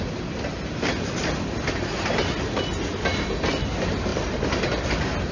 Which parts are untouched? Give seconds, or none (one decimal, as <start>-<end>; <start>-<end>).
0.0-5.3